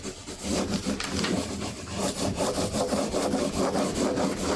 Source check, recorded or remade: recorded